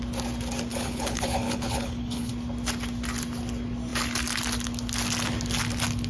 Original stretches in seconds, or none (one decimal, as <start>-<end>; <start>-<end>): 0.0-0.7; 2.3-6.1